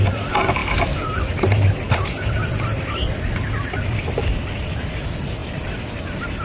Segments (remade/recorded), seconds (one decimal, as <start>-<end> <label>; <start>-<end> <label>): 0.0-6.4 recorded

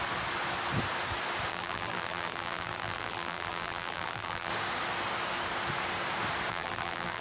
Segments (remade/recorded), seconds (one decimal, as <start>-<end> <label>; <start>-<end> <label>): 0.0-1.5 recorded; 1.5-4.5 remade; 4.5-6.5 recorded; 6.5-7.2 remade

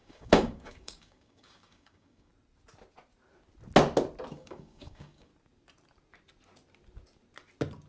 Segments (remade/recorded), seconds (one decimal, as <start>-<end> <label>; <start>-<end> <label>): 0.0-2.3 remade; 2.3-4.3 recorded; 4.3-5.3 remade; 5.3-7.9 recorded

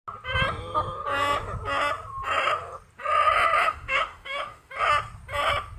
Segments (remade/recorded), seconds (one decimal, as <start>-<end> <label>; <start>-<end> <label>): 0.0-3.6 recorded; 3.6-4.7 remade; 4.7-5.8 recorded

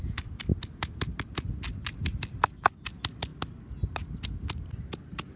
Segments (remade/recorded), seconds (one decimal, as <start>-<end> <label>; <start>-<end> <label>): 0.0-0.5 remade; 0.5-1.2 recorded; 1.2-3.3 remade; 3.3-5.0 recorded; 5.0-5.4 remade